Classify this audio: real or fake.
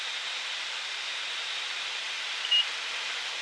real